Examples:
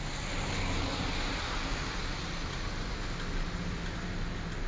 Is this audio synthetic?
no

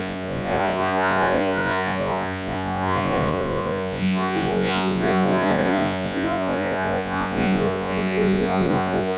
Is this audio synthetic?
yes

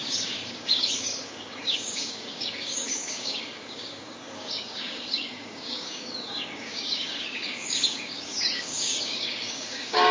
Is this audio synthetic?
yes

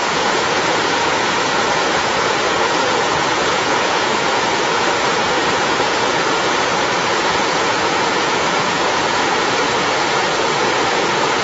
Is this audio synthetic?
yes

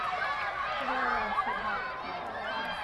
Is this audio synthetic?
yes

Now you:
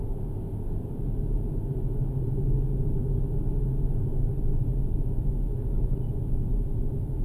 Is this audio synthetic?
no